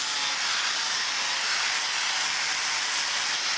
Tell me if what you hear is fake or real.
real